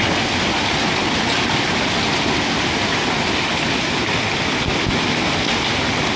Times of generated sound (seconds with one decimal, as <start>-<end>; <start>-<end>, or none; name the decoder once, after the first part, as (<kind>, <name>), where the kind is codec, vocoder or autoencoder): none